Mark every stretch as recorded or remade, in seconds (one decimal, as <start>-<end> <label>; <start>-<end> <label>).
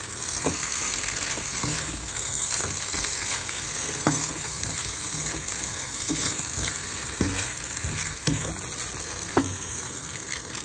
0.0-8.5 remade; 8.5-9.0 recorded; 9.0-10.6 remade